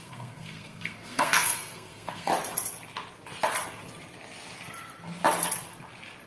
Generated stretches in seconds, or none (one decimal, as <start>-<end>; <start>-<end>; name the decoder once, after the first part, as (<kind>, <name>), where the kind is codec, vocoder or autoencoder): 0.0-2.3 (codec, SNAC)